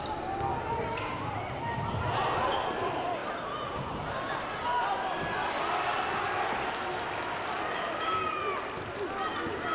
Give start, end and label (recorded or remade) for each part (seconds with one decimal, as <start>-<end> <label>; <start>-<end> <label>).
0.0-9.7 recorded